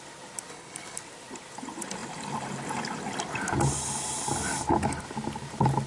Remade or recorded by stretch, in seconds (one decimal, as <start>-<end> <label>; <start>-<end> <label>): 0.0-0.5 recorded; 0.5-1.0 remade; 1.0-5.9 recorded